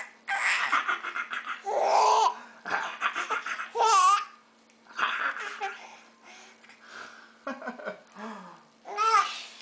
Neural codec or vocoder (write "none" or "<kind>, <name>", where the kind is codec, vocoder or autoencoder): none